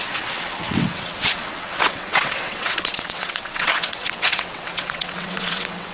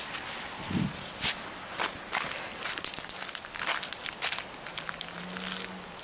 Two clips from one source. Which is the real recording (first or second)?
second